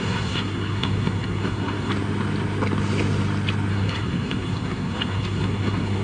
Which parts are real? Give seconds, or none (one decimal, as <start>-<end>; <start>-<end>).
1.9-3.7